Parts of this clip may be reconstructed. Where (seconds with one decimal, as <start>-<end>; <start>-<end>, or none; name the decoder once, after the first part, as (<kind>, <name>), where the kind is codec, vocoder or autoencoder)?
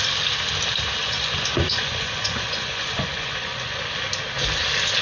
1.0-3.8 (vocoder, Vocos)